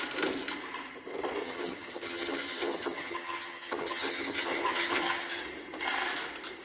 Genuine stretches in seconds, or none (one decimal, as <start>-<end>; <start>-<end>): 0.0-1.4; 5.4-6.6